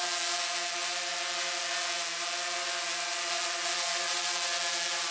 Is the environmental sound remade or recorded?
recorded